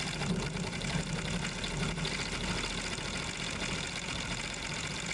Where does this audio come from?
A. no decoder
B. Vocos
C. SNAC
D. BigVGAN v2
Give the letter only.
A